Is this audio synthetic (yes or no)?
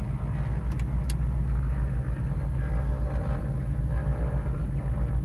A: no